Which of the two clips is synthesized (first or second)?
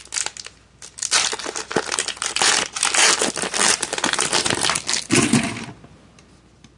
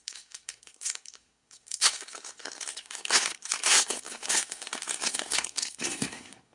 second